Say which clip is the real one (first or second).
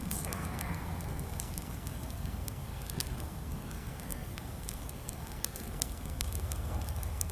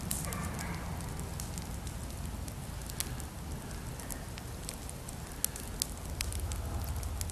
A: second